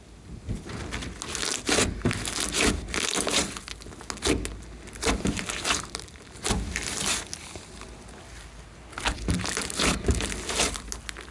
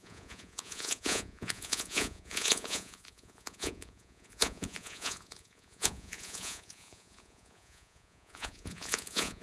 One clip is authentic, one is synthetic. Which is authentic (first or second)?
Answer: first